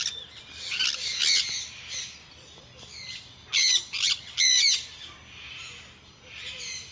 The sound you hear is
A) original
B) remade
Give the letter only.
A